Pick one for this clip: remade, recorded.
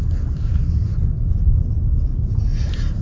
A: recorded